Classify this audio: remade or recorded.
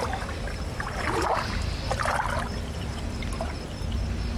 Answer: recorded